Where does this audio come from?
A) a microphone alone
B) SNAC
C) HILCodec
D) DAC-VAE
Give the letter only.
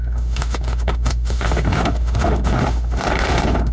D